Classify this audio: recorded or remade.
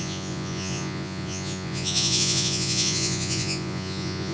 remade